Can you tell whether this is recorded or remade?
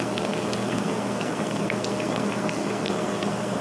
remade